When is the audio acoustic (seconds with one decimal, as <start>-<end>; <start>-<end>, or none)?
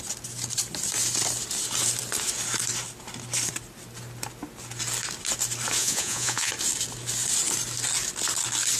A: 0.0-5.8; 6.5-8.8